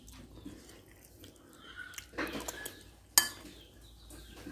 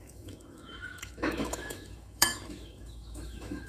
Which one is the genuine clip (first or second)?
first